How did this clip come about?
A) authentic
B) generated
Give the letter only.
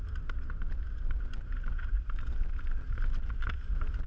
A